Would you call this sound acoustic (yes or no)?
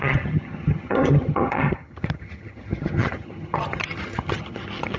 no